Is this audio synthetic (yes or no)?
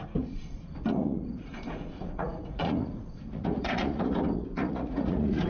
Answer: yes